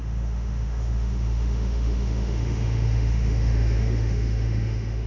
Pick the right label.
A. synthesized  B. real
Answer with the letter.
A